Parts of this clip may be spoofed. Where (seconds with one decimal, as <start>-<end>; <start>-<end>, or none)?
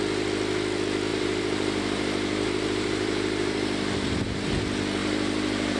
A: 1.1-4.6; 5.0-5.8